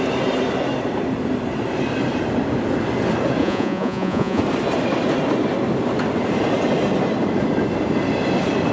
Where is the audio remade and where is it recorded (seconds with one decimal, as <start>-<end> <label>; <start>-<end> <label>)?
0.0-3.4 recorded; 3.4-4.4 remade; 4.4-8.7 recorded